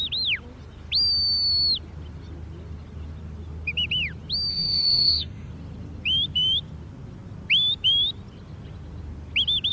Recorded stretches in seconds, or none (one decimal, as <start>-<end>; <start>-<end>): 0.0-4.5; 5.5-9.7